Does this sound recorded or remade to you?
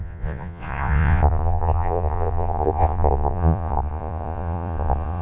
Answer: remade